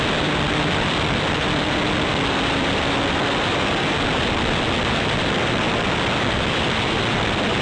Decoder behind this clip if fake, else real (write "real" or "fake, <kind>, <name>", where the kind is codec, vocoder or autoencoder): fake, vocoder, BigVGAN v2